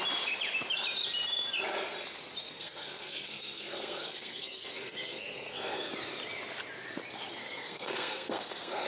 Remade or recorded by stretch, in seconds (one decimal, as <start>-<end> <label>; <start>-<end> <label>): 0.0-2.4 recorded; 2.4-5.9 remade; 5.9-7.4 recorded; 7.4-8.9 remade